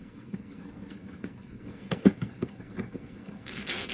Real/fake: fake